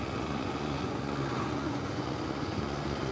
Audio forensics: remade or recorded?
remade